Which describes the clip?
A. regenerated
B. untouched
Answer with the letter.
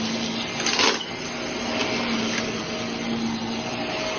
B